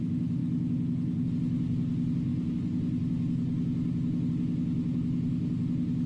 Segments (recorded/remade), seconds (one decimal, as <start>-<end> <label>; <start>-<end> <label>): 0.0-6.1 recorded